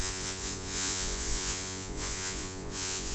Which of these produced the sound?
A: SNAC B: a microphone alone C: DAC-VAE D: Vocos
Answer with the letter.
D